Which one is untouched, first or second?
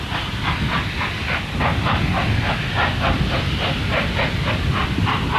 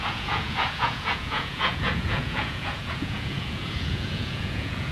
first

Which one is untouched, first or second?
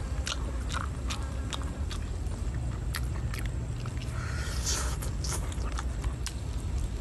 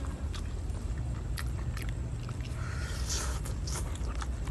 first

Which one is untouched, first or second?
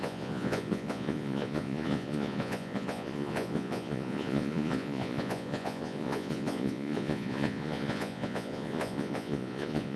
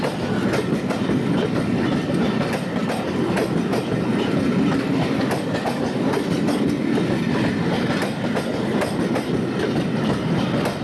second